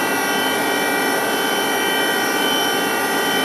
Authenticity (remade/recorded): recorded